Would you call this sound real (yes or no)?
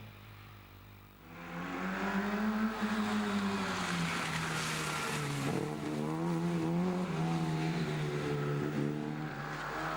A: yes